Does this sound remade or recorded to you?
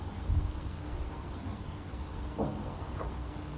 remade